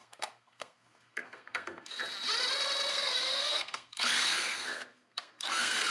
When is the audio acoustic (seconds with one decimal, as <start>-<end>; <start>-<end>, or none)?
2.0-2.9